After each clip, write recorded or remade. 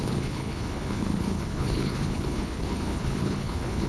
remade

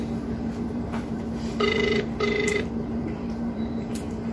remade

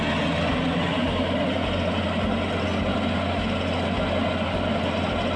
recorded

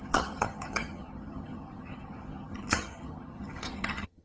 remade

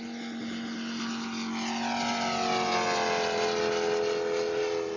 recorded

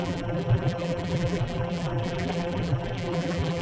remade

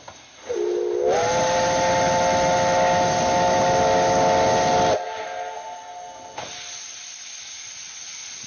recorded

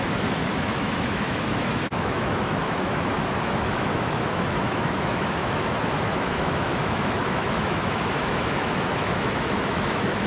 remade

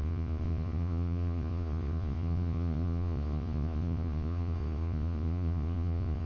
remade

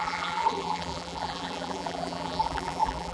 remade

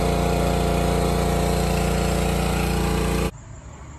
recorded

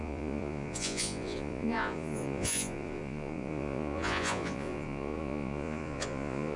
remade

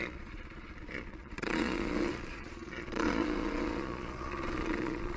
remade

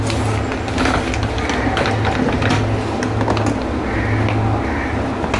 recorded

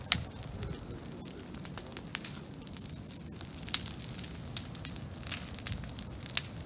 recorded